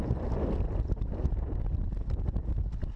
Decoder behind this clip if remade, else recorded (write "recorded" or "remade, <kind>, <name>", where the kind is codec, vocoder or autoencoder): recorded